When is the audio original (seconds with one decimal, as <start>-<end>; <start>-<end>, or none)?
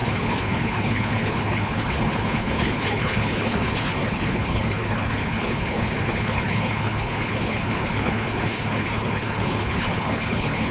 none